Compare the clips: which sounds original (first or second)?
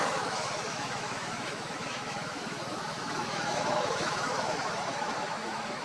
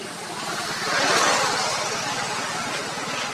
second